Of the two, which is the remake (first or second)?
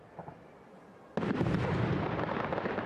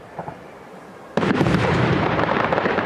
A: second